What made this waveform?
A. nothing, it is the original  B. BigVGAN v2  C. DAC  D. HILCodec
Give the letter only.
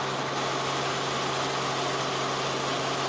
A